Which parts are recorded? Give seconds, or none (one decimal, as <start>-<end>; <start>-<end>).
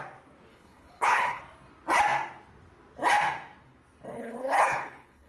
0.0-0.5; 1.4-4.1